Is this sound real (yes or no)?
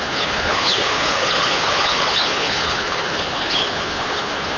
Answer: no